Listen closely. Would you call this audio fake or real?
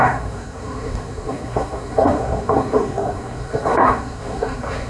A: fake